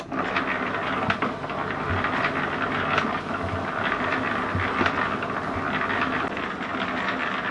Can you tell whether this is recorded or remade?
recorded